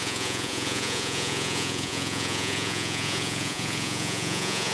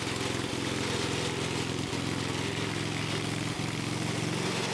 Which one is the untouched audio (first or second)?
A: second